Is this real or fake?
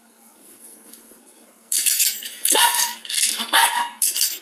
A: fake